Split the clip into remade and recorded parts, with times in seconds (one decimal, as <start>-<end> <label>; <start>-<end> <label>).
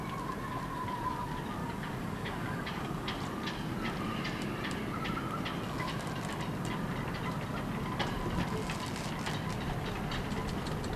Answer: 0.0-1.6 recorded; 1.6-3.2 remade; 3.2-11.0 recorded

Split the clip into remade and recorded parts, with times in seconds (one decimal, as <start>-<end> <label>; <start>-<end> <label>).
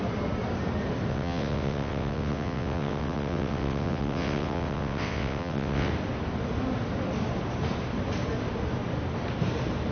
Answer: 0.0-1.1 recorded; 1.1-5.9 remade; 5.9-9.9 recorded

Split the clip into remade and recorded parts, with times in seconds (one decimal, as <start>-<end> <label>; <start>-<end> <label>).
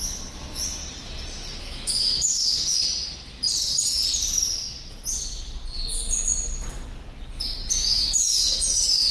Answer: 0.0-0.8 remade; 0.8-1.6 recorded; 1.6-2.8 remade; 2.8-7.7 recorded; 7.7-9.1 remade